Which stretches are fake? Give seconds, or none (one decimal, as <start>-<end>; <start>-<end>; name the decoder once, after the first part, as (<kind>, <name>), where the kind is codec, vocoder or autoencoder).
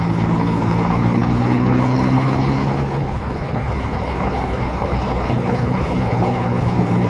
0.0-7.1 (codec, HILCodec)